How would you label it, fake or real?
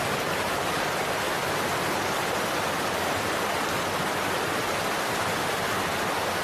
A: real